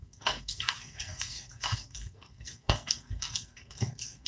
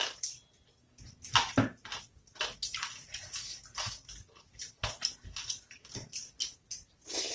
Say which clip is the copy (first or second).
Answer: first